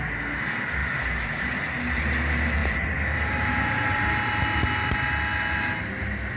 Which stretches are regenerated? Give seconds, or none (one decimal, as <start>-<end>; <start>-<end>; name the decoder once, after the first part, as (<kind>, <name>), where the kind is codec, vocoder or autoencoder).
0.8-1.4 (vocoder, BigVGAN v2); 2.6-4.9